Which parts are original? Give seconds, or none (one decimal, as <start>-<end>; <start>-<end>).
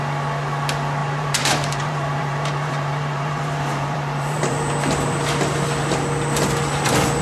0.0-1.0; 4.6-7.2